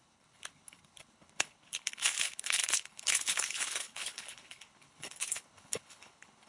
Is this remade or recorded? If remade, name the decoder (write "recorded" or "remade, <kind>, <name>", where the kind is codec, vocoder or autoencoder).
remade, codec, HILCodec